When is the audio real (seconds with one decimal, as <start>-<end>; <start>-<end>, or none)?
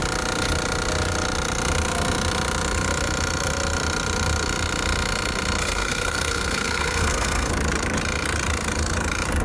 0.0-5.6; 7.5-9.4